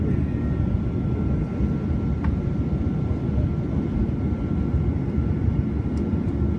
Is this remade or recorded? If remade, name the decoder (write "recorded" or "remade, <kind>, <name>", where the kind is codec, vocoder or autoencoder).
recorded